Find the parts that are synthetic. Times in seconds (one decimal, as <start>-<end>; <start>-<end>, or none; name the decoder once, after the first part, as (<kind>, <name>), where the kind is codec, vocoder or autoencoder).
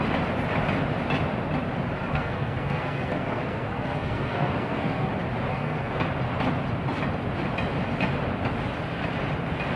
2.1-5.1 (codec, SNAC); 5.5-6.1